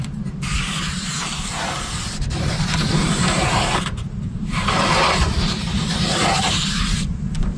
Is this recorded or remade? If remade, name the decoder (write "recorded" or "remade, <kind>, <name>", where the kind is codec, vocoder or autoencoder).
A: remade, vocoder, BigVGAN v2